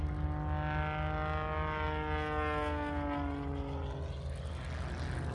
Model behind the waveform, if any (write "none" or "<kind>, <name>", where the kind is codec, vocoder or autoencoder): none